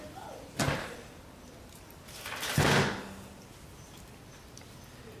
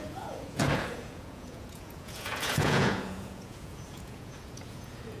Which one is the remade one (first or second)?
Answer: second